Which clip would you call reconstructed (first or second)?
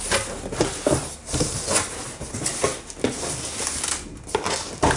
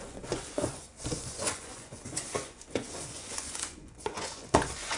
second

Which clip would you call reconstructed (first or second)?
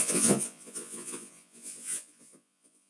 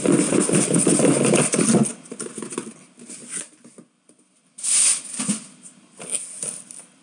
first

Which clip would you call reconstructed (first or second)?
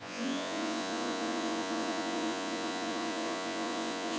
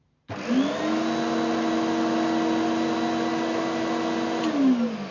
first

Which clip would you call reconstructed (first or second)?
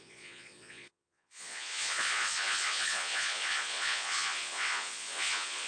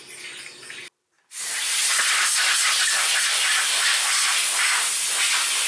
first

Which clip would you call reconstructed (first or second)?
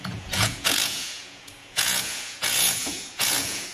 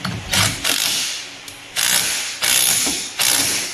first